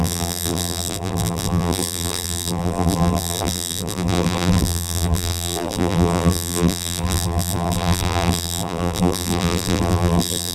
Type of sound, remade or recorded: remade